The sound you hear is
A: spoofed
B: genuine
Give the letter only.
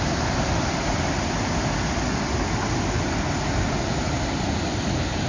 B